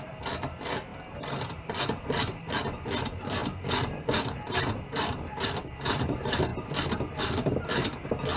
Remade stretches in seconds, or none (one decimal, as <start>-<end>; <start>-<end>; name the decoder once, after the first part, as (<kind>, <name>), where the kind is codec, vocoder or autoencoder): 0.0-0.9 (vocoder, BigVGAN v2); 1.5-8.4